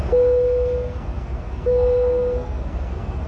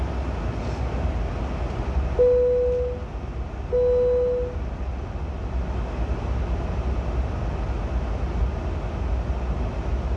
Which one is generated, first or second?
first